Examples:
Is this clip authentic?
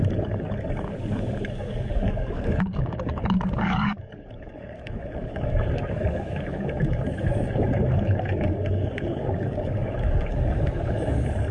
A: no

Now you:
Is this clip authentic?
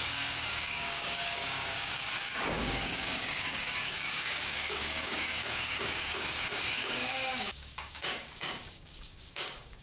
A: no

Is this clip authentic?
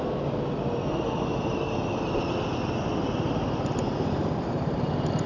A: yes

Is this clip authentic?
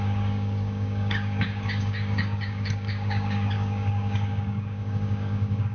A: no